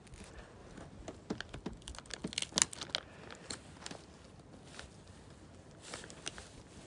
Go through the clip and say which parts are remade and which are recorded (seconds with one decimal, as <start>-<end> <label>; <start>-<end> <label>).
0.0-6.9 recorded